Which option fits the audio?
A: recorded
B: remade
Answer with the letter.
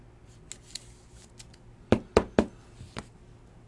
A